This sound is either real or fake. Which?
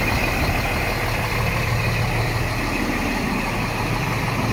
real